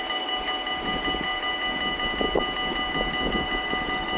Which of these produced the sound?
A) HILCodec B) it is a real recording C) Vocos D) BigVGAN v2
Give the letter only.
B